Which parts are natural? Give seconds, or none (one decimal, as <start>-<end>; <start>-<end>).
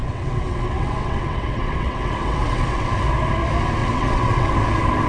2.9-3.8; 4.5-5.1